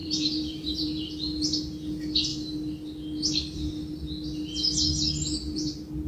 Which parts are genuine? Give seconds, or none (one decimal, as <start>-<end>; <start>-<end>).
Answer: 1.1-6.1

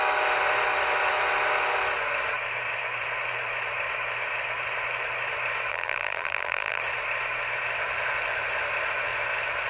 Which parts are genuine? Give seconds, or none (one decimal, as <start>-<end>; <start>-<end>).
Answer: 0.0-5.7; 6.8-9.7